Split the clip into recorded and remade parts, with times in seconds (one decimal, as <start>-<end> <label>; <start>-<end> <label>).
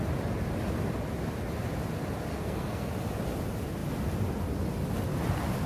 0.0-2.3 recorded; 2.3-2.9 remade; 2.9-5.7 recorded